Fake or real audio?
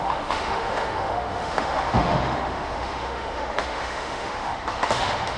fake